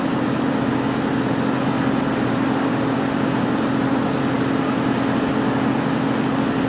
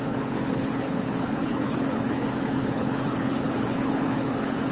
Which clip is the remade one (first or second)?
second